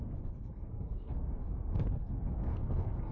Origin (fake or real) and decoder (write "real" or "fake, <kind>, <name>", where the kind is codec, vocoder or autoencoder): fake, codec, SNAC